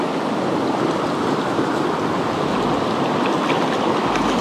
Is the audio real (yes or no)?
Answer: yes